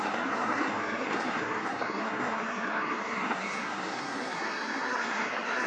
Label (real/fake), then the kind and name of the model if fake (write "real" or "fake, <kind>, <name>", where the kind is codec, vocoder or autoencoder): fake, codec, SNAC